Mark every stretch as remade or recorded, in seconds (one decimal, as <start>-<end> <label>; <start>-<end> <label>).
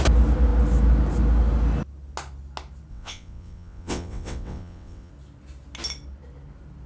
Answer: 0.0-2.9 recorded; 2.9-5.1 remade; 5.1-6.9 recorded